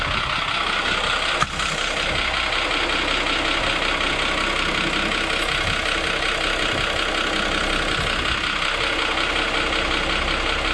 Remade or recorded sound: recorded